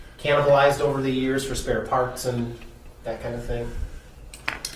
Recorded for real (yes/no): yes